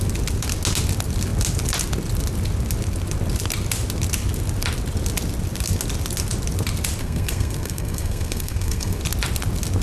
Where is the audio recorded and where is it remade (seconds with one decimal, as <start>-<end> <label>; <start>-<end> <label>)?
0.0-7.0 recorded; 7.0-9.0 remade; 9.0-9.8 recorded